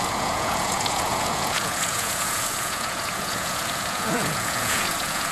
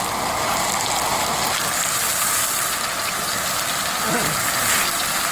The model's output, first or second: first